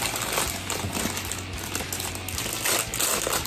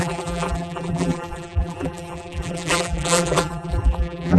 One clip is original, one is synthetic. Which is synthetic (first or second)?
second